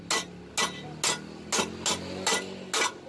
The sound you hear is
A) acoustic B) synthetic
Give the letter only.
A